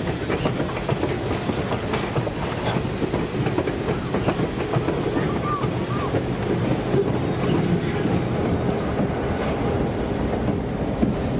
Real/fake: real